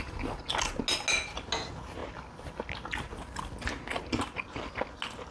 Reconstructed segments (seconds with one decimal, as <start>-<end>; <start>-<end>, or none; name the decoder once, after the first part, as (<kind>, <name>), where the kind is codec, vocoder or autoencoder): none

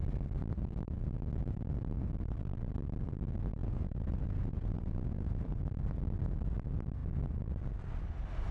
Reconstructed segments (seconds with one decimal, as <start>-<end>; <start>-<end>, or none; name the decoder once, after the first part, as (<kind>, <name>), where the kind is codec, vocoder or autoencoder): 3.6-5.6 (vocoder, Vocos)

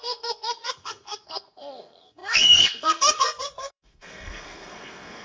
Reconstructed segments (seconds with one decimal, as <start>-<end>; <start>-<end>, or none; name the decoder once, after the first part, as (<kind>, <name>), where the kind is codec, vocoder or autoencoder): 0.0-5.2 (codec, SNAC)

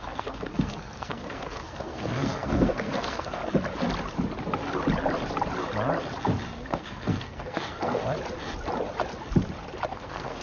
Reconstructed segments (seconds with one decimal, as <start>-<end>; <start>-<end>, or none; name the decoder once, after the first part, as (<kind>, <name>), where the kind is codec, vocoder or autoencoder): 0.0-3.4 (codec, SNAC); 6.7-8.0; 9.9-10.4

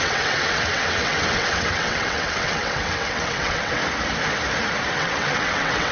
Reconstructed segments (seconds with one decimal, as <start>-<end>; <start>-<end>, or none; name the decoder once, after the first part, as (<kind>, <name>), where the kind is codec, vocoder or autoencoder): 0.0-3.8 (vocoder, WaveNeXt); 4.9-5.9

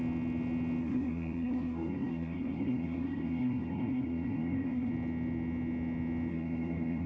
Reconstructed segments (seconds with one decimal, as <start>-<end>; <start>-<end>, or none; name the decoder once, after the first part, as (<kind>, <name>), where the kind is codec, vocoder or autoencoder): 0.8-4.9 (codec, SNAC); 6.3-7.1